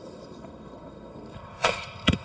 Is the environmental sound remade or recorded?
remade